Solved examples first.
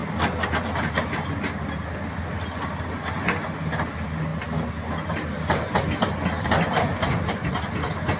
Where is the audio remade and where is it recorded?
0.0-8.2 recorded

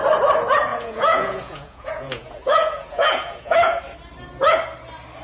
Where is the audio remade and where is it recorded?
0.0-0.7 recorded; 0.7-3.8 remade; 3.8-5.2 recorded

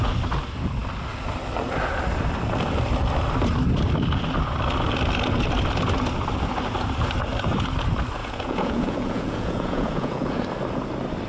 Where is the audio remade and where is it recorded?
0.0-8.2 recorded; 8.2-10.4 remade; 10.4-11.3 recorded